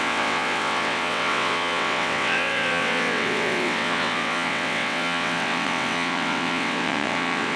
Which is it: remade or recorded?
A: remade